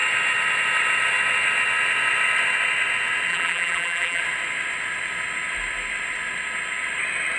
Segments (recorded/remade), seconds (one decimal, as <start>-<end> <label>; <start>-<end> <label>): 0.0-3.3 recorded; 3.3-4.2 remade; 4.2-7.4 recorded